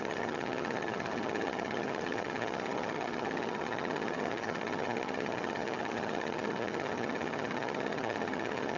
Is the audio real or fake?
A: fake